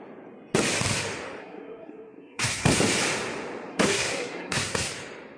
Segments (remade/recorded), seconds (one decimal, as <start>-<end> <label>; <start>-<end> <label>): 0.0-1.4 recorded; 1.4-2.8 remade; 2.8-3.7 recorded; 3.7-4.9 remade; 4.9-5.4 recorded